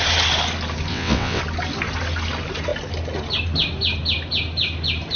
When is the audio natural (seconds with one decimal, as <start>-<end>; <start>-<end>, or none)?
0.0-0.9; 1.4-5.2

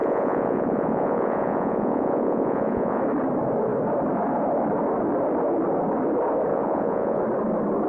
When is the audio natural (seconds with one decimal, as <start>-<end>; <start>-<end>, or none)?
3.0-6.5; 7.2-7.9

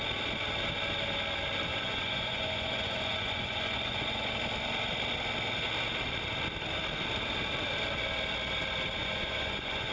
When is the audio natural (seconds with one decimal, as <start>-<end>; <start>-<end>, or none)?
0.0-1.7; 4.3-9.0

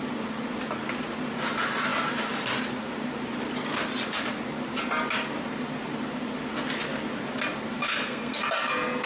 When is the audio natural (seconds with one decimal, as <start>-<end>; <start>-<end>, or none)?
0.0-7.8; 8.4-9.1

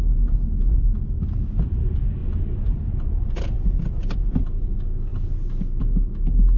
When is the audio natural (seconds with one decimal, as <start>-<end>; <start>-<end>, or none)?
0.0-2.2; 3.1-6.6

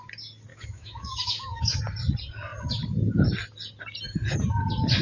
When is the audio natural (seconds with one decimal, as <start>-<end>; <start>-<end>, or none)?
0.0-0.5; 1.8-5.0

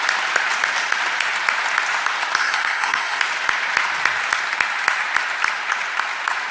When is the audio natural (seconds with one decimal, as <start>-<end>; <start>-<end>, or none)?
0.0-2.4; 3.2-6.5